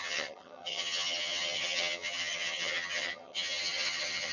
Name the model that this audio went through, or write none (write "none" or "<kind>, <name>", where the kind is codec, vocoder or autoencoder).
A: vocoder, HiFi-GAN